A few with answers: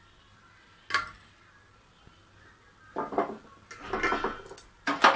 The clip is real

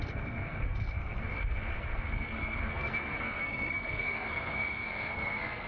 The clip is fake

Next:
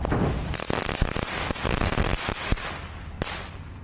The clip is real